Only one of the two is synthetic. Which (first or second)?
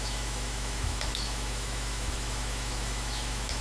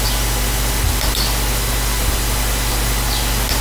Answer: first